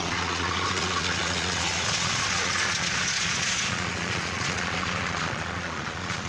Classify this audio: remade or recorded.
remade